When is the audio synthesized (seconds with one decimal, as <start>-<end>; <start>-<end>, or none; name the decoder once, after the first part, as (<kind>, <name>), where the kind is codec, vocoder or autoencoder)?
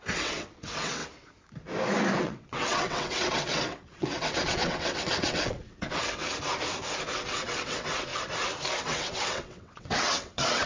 0.0-1.0 (vocoder, WaveNeXt); 2.2-6.2; 7.2-8.1; 8.8-10.7